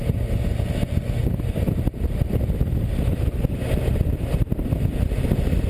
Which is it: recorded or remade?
recorded